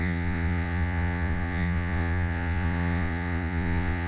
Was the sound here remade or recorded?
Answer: remade